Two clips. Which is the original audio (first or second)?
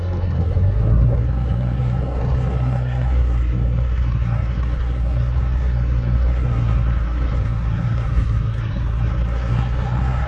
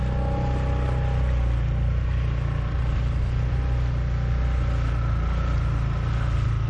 second